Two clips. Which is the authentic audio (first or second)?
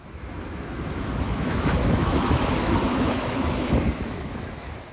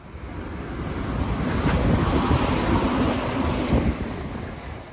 second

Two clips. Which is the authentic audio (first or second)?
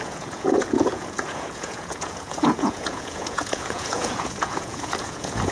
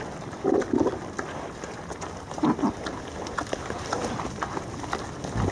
second